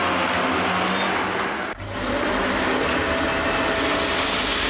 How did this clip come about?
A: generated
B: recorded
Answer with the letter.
B